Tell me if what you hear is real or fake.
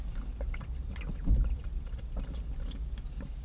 real